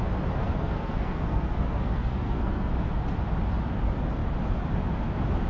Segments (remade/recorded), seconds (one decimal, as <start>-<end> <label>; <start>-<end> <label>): 0.0-0.4 recorded; 0.4-2.7 remade; 2.7-5.5 recorded